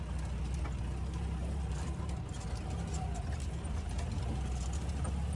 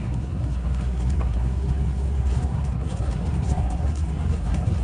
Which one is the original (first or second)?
first